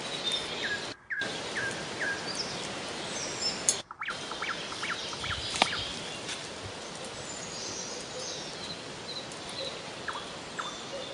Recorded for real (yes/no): yes